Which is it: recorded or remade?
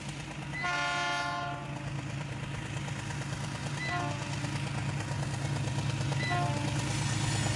recorded